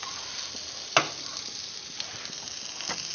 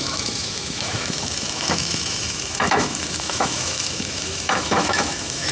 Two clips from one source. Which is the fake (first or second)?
second